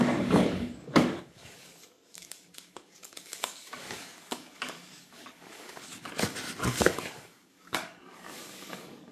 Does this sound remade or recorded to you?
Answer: remade